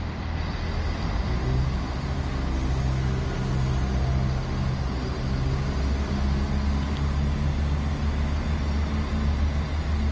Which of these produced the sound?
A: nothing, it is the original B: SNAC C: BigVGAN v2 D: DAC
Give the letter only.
A